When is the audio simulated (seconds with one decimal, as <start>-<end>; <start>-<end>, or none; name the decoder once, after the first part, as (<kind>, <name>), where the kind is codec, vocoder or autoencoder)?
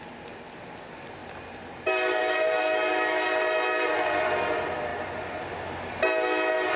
none